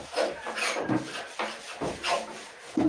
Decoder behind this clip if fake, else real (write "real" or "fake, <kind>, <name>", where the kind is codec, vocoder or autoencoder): fake, vocoder, BigVGAN v2